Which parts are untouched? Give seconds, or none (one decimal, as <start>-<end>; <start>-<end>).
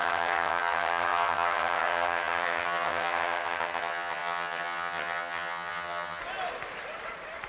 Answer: 6.2-7.5